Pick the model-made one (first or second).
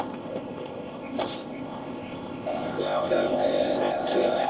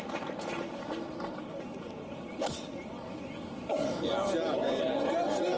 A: first